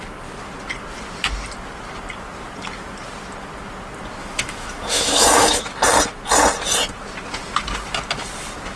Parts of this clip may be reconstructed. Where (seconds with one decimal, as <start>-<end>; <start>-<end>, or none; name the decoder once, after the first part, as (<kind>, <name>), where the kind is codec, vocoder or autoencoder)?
4.2-5.7 (autoencoder, DAC-VAE)